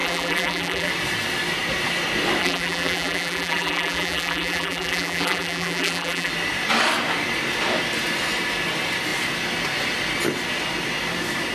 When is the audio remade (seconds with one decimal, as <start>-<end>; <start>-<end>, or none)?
0.0-0.9; 2.4-6.3